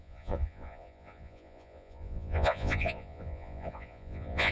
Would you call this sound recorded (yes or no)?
no